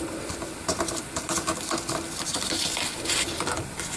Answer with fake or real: real